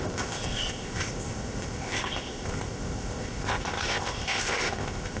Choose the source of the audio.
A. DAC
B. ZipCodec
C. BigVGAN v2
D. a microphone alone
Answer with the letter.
B